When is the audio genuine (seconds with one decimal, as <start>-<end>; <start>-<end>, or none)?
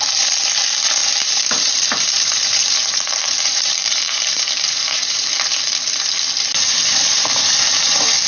0.0-1.0; 5.3-8.3